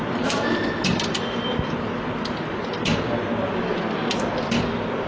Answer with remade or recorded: recorded